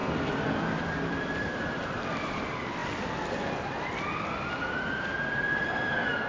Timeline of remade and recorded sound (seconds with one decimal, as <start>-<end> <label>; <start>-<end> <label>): 0.0-2.8 remade; 2.8-5.6 recorded; 5.6-6.3 remade